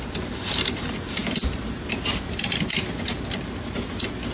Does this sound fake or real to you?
real